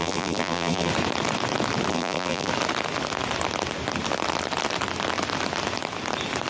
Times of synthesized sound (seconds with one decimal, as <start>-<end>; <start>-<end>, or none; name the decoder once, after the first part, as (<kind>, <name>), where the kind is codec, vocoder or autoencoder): 0.0-0.9 (vocoder, BigVGAN v2); 1.9-2.5